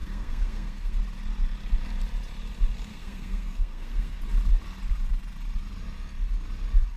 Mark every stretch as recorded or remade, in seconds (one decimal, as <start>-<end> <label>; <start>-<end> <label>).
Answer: 0.0-1.0 remade; 1.0-2.9 recorded; 2.9-4.2 remade; 4.2-7.0 recorded